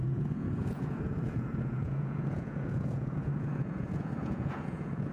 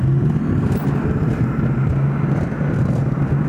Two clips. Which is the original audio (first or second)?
second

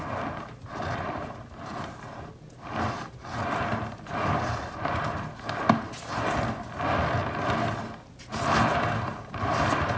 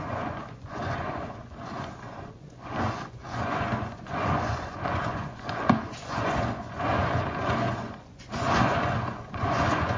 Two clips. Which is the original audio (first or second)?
first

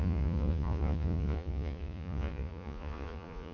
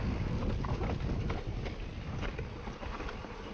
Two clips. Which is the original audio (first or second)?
second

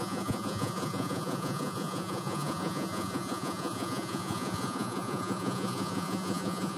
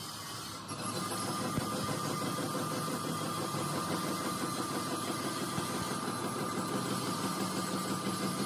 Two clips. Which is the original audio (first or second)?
second